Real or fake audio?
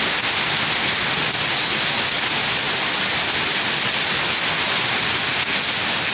real